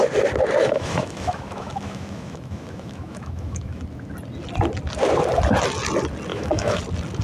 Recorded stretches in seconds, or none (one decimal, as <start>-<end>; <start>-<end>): 0.0-0.6; 3.8-6.3; 6.8-7.2